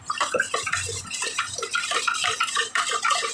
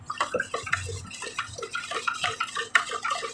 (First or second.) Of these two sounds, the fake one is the first